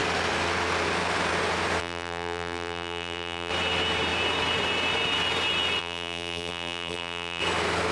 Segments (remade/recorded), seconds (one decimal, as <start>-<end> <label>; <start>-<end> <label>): 0.0-1.8 recorded; 1.8-3.5 remade; 3.5-5.8 recorded; 5.8-7.4 remade; 7.4-7.9 recorded